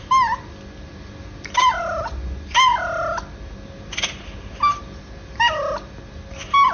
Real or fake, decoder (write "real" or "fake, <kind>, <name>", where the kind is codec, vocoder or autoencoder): real